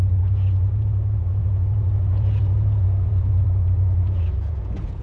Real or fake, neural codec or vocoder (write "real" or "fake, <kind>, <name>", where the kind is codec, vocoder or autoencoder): fake, vocoder, Vocos